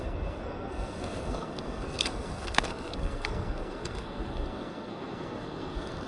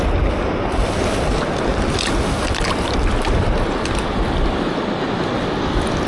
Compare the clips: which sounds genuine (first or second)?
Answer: second